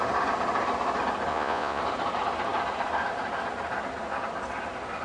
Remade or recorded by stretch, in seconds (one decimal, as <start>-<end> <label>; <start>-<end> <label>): 0.0-1.3 recorded; 1.3-1.8 remade; 1.8-5.0 recorded